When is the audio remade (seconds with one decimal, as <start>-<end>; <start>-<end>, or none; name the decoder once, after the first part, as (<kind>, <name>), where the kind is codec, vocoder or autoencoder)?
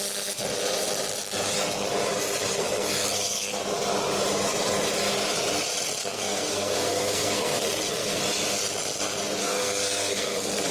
2.5-3.6 (codec, SNAC); 6.0-8.2; 9.4-10.7